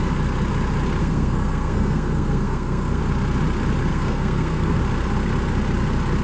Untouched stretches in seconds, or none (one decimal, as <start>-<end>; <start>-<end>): 0.0-1.0; 3.0-3.9; 4.8-6.2